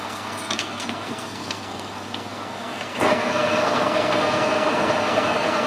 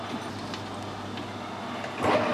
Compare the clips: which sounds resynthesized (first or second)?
first